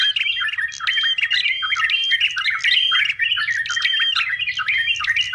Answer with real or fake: real